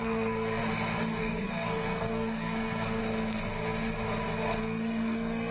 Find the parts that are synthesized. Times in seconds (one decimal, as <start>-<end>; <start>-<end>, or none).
0.0-0.6; 1.2-3.0; 4.6-5.5